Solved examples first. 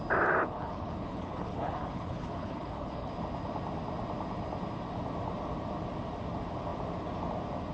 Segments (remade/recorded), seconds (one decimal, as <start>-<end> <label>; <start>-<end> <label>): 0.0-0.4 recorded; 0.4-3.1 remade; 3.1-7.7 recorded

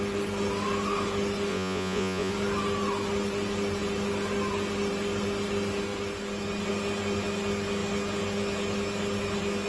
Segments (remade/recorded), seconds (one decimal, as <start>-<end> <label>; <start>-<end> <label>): 0.0-1.5 recorded; 1.5-2.3 remade; 2.3-9.7 recorded

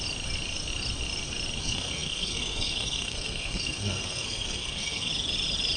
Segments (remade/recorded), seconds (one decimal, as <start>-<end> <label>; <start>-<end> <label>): 0.0-1.6 recorded; 1.6-5.1 remade; 5.1-5.8 recorded